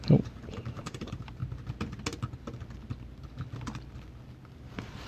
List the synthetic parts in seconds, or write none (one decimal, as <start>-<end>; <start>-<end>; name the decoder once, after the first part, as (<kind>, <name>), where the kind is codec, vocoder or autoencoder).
0.0-1.4 (vocoder, BigVGAN v2); 4.5-5.1